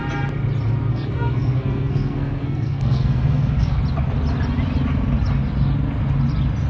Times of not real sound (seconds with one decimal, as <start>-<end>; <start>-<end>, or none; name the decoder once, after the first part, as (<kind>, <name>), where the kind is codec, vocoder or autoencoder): 0.9-3.8 (codec, SNAC)